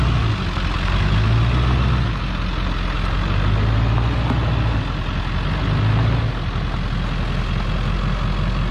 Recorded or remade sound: recorded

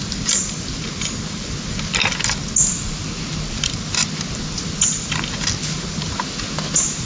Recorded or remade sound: recorded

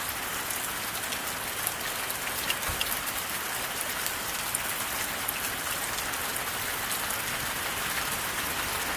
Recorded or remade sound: recorded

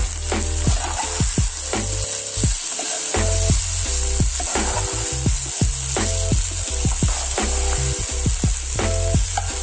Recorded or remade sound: recorded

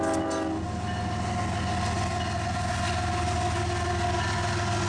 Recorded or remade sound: recorded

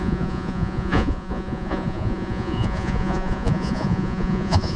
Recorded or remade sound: remade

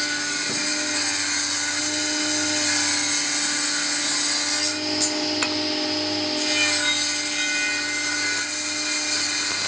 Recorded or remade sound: recorded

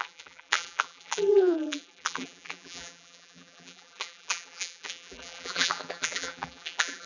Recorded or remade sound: remade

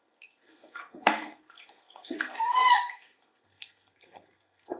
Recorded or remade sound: remade